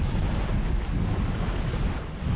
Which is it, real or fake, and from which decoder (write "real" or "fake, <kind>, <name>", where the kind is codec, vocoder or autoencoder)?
real